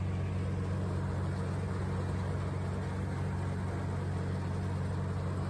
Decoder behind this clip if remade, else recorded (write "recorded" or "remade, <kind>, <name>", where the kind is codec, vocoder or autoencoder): recorded